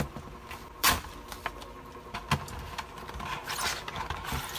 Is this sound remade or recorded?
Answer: recorded